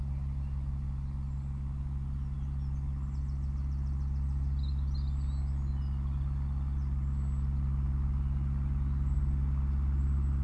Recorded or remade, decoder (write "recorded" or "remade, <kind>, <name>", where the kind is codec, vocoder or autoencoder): recorded